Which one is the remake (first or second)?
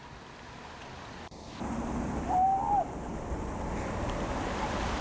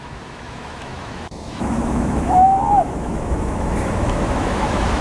second